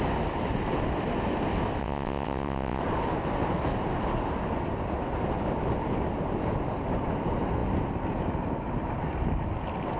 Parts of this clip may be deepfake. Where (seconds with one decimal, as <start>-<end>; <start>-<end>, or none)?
1.8-2.8